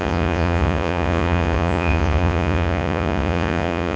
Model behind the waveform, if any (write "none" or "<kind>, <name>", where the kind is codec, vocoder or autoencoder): vocoder, Vocos